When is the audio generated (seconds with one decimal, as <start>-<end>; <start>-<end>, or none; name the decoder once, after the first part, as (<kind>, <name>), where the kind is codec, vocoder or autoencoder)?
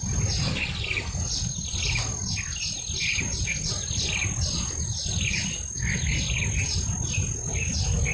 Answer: none